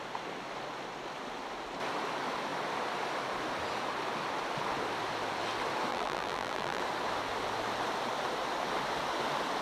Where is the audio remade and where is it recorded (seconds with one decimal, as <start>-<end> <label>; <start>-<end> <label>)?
0.0-5.9 recorded; 5.9-6.8 remade; 6.8-9.6 recorded